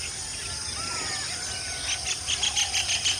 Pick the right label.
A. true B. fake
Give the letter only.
A